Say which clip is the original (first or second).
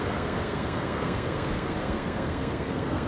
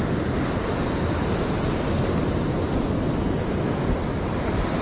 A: second